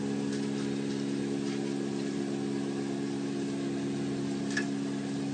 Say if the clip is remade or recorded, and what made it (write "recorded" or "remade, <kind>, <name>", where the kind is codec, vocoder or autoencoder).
recorded